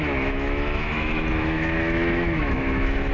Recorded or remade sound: remade